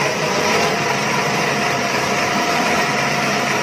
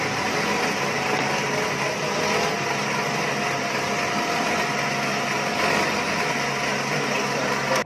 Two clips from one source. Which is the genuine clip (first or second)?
second